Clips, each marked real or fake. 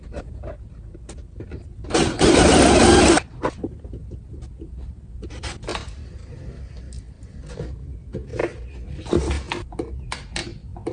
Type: real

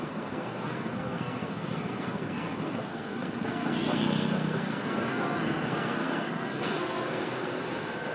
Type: fake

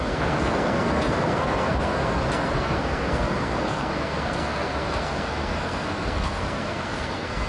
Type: fake